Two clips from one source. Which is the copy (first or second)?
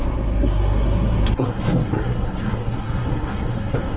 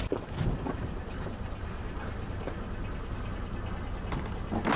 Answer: first